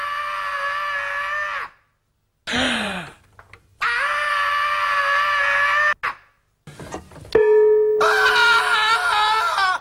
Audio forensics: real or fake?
real